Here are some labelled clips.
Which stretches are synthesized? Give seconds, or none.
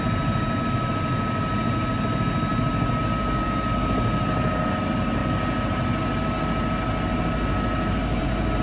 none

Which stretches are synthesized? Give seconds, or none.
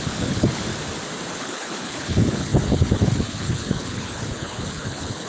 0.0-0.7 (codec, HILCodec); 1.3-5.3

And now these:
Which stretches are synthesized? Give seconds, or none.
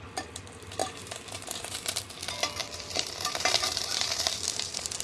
0.8-2.0 (vocoder, BigVGAN v2); 2.6-5.0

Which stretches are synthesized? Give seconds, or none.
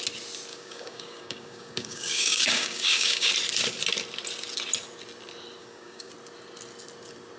0.5-3.3 (codec, DAC); 5.6-6.1